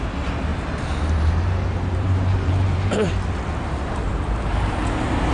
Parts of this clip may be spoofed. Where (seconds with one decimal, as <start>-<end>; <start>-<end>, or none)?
0.5-3.1; 4.1-4.8